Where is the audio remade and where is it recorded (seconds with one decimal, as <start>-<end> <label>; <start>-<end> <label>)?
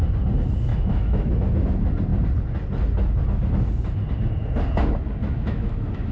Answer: 0.0-0.7 recorded; 0.7-1.3 remade; 1.3-5.2 recorded; 5.2-6.1 remade